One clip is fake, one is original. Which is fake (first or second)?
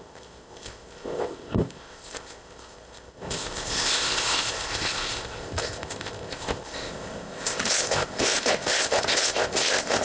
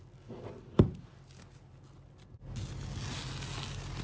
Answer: first